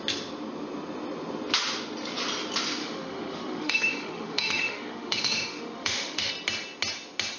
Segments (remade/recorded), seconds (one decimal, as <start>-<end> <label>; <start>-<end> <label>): 0.0-2.8 recorded; 2.8-6.3 remade; 6.3-7.4 recorded